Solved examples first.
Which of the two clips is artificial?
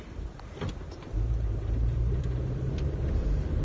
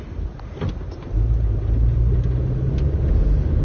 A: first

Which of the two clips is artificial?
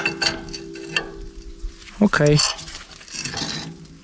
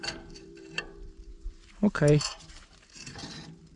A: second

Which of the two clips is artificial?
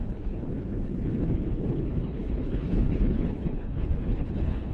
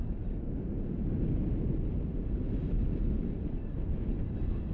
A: first